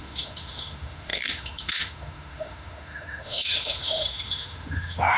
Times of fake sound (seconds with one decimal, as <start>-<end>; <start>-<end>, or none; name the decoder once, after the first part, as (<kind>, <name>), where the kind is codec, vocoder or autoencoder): 0.0-5.2 (autoencoder, DAC-VAE)